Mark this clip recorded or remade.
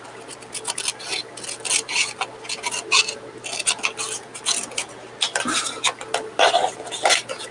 recorded